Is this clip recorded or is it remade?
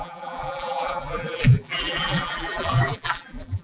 remade